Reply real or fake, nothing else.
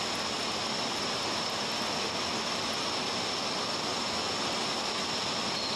real